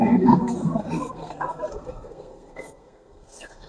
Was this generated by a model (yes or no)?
yes